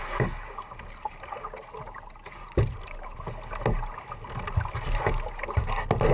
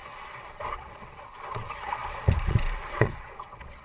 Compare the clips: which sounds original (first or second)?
first